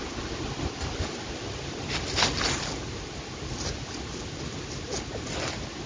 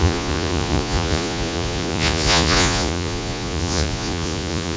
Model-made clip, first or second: second